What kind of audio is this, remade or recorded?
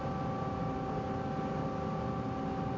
recorded